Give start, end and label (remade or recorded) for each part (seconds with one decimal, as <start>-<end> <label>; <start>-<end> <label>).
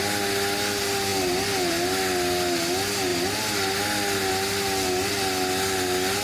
0.0-6.2 recorded